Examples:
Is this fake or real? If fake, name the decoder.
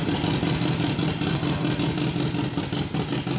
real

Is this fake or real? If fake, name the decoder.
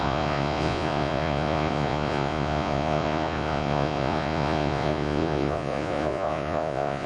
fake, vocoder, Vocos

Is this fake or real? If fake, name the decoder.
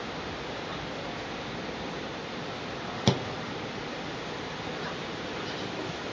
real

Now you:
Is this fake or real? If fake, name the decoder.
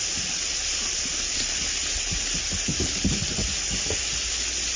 real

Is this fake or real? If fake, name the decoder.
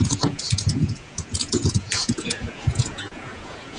fake, vocoder, Vocos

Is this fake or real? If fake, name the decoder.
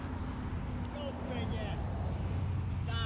real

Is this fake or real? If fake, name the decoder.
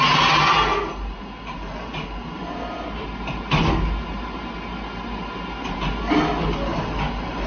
real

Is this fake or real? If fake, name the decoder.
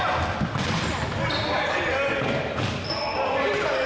real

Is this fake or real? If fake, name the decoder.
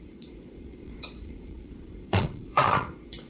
fake, vocoder, Vocos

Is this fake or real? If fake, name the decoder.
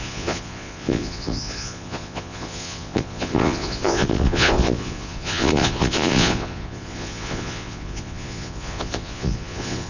fake, vocoder, Vocos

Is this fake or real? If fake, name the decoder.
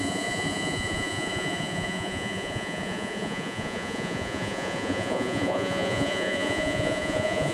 fake, vocoder, Vocos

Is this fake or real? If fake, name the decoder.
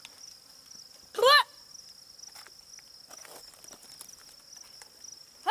real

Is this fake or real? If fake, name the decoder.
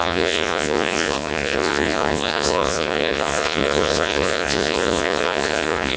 fake, vocoder, Vocos